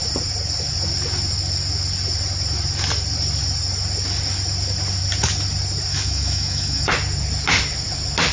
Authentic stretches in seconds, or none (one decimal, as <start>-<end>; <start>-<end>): 0.0-5.9; 6.9-8.3